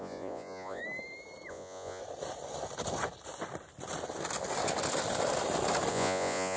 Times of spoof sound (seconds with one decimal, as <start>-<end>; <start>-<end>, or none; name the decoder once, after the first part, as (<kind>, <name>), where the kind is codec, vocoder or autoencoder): 0.0-0.8 (vocoder, Vocos); 1.5-2.0; 5.9-6.6